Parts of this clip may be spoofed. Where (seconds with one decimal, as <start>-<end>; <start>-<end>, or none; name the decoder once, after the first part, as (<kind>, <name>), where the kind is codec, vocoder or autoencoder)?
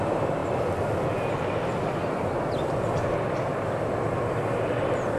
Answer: 0.0-0.4 (vocoder, BigVGAN v2); 3.5-5.2